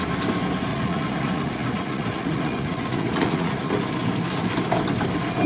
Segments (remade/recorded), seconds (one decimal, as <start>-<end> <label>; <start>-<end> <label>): 0.0-0.7 recorded; 0.7-3.7 remade; 3.7-5.5 recorded